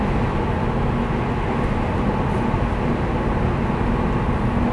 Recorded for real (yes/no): yes